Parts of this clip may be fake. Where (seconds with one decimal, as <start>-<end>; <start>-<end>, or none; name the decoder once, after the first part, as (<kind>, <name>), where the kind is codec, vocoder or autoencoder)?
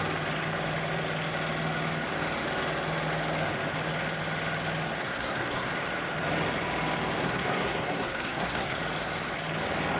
5.0-5.7 (codec, SNAC); 7.2-8.8